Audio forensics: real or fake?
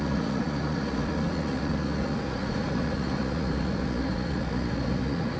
fake